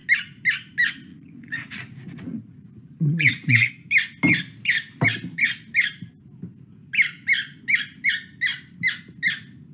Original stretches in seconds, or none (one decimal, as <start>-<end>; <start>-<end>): 0.0-1.1; 3.7-9.7